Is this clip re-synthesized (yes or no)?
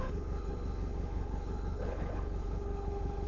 yes